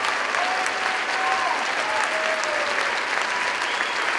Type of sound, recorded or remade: recorded